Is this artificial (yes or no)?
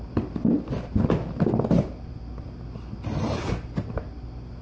no